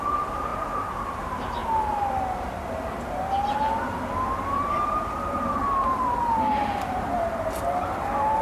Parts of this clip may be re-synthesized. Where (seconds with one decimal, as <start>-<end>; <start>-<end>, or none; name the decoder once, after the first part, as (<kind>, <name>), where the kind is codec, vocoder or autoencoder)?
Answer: 0.0-1.6 (vocoder, BigVGAN v2); 4.5-7.3; 8.0-8.4